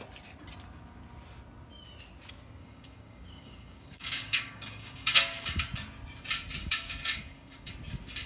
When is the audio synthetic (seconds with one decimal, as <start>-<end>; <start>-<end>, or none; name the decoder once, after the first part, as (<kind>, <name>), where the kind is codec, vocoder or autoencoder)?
2.6-5.6 (codec, DAC); 6.6-7.7